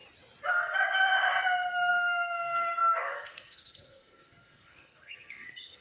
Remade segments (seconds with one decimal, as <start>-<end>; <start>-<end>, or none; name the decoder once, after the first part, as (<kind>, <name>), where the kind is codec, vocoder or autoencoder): 0.5-1.1 (codec, SNAC); 1.9-5.8